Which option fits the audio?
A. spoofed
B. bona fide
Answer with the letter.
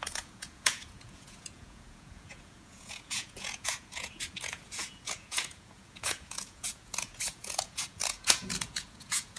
A